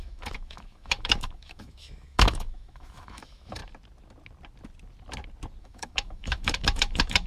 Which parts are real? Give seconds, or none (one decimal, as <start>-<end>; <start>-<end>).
3.6-5.6